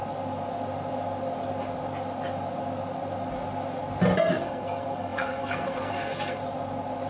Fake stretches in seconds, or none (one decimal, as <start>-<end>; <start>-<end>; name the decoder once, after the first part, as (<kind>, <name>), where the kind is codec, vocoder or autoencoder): 4.3-6.4 (codec, SNAC)